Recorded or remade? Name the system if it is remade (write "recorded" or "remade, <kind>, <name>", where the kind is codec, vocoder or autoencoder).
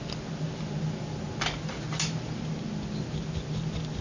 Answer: recorded